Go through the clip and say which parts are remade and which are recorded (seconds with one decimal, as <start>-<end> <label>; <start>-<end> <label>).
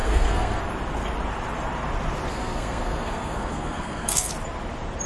0.0-0.6 remade; 0.6-2.3 recorded; 2.3-4.3 remade; 4.3-5.1 recorded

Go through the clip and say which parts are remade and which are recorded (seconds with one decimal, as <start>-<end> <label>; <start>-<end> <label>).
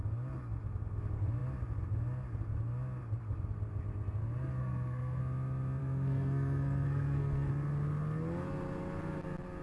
0.0-4.6 recorded; 4.6-5.2 remade; 5.2-5.8 recorded; 5.8-7.5 remade; 7.5-9.6 recorded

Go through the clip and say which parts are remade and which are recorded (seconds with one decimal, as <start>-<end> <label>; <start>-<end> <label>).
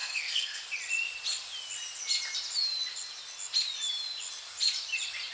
0.0-0.6 remade; 0.6-5.3 recorded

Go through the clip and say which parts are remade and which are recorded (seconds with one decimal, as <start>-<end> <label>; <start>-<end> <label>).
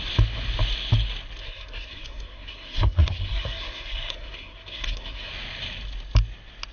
0.0-1.4 recorded; 1.4-5.3 remade; 5.3-6.7 recorded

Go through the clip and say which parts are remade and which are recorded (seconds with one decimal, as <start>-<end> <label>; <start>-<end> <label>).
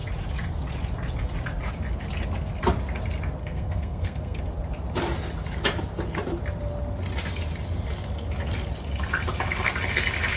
0.0-3.4 recorded; 3.4-4.4 remade; 4.4-10.4 recorded